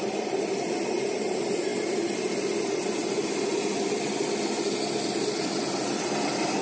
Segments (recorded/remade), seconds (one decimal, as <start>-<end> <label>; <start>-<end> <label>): 0.0-1.7 remade; 1.7-5.0 recorded; 5.0-6.6 remade